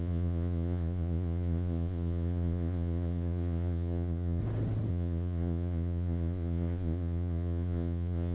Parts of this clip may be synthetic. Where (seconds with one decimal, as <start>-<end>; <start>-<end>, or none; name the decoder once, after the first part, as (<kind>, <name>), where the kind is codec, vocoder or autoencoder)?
0.0-4.4 (vocoder, Vocos); 4.9-8.3